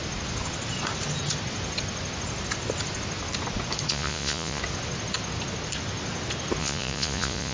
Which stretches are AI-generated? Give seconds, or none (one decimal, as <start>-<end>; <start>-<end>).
3.9-4.6; 6.6-7.5